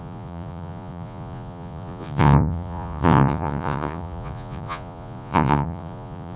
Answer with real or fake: fake